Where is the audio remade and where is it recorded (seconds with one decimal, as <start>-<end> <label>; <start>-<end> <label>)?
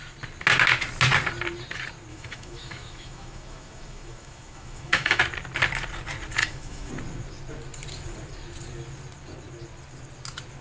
0.0-2.1 recorded; 2.1-5.2 remade; 5.2-6.4 recorded; 6.4-6.9 remade; 6.9-10.6 recorded